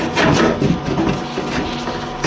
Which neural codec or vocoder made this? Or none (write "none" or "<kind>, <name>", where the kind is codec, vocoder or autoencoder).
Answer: none